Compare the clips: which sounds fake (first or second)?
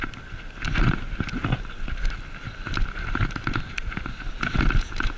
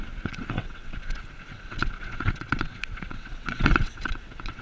second